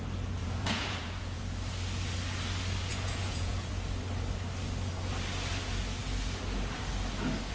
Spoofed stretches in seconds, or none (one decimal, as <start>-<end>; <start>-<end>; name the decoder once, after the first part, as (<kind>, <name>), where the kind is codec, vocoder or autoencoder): 0.4-1.4 (vocoder, Vocos); 2.9-3.7